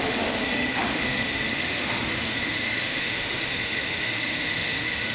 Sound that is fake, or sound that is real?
fake